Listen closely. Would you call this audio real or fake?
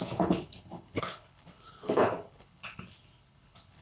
fake